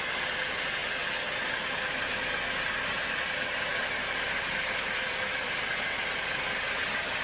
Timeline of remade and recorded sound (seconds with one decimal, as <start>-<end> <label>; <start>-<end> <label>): 0.0-7.2 recorded